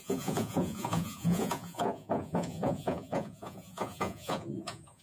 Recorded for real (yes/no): no